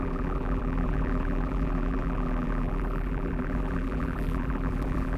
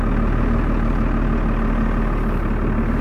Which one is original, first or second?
second